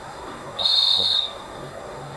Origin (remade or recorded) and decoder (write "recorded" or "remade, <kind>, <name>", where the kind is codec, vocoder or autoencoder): remade, codec, SNAC